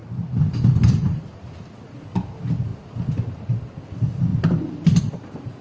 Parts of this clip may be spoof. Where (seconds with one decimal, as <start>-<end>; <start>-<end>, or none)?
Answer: none